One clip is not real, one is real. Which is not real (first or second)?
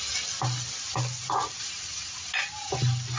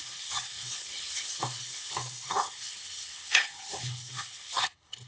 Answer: second